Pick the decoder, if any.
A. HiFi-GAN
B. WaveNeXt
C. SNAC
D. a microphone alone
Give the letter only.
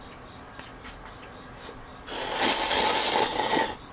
D